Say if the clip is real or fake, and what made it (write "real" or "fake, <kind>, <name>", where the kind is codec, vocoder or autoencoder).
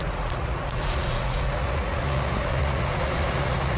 fake, vocoder, Vocos